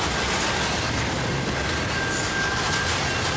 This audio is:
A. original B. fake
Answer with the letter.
A